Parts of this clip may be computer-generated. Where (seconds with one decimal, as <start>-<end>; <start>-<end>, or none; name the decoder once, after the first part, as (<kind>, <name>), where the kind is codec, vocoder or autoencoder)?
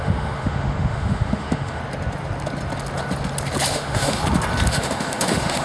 0.0-1.8 (autoencoder, DAC-VAE); 3.7-4.2; 4.7-5.6